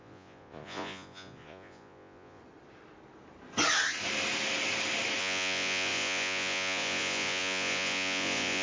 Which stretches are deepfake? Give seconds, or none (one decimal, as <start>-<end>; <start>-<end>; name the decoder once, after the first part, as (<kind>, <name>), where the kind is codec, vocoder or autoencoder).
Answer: 0.0-2.4 (vocoder, Vocos); 5.2-8.6